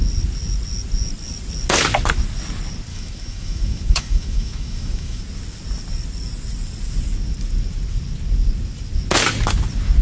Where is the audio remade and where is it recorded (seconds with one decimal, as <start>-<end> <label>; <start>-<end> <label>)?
0.0-2.9 recorded; 2.9-5.2 remade; 5.2-10.0 recorded